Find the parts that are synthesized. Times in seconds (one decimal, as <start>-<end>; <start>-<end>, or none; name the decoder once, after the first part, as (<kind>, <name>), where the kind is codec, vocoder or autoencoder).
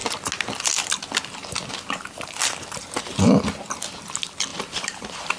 4.5-5.4 (vocoder, BigVGAN v2)